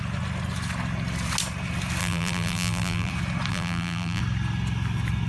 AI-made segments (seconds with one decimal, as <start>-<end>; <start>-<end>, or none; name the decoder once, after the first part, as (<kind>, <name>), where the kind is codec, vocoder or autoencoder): 2.0-3.1 (vocoder, BigVGAN v2); 3.5-4.2